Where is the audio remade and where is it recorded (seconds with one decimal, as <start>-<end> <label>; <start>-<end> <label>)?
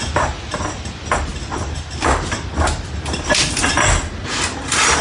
0.0-5.0 recorded